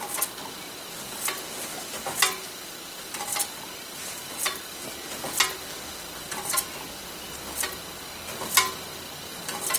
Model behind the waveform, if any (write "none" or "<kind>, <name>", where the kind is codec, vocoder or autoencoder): none